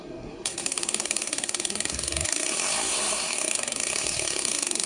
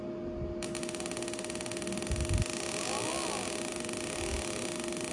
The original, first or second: second